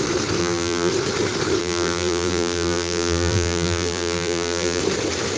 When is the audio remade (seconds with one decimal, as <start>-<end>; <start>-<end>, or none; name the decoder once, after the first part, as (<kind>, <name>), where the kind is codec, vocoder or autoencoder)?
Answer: 0.4-0.9 (vocoder, BigVGAN v2); 1.6-4.8